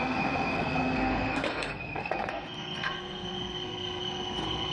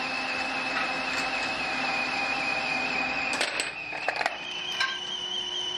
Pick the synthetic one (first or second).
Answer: first